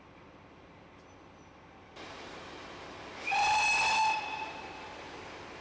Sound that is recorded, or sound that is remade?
recorded